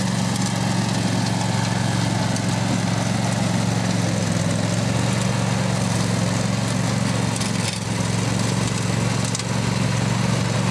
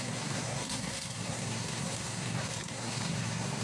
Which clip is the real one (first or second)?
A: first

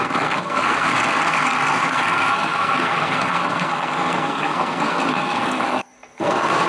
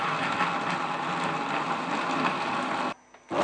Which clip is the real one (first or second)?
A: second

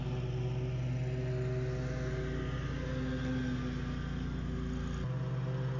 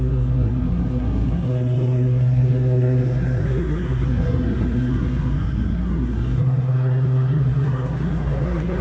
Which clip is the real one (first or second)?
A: first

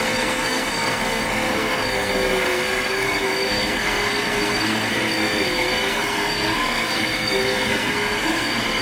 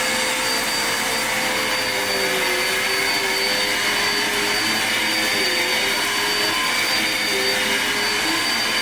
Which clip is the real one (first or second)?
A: second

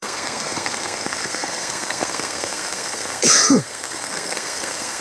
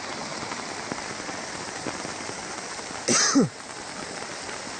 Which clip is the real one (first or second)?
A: second